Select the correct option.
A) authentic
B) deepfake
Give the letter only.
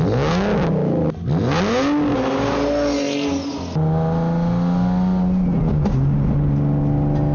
A